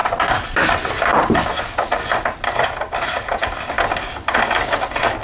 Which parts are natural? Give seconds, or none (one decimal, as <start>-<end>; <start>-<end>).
0.0-5.2